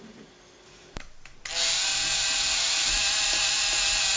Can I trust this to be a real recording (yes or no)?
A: yes